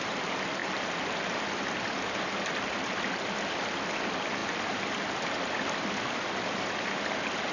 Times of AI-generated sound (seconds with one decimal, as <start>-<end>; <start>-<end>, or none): none